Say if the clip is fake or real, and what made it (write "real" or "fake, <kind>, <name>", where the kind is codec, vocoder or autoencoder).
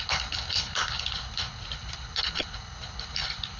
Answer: fake, codec, HILCodec